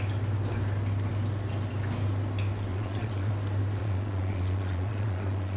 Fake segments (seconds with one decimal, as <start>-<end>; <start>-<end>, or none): 2.7-3.3; 3.8-5.6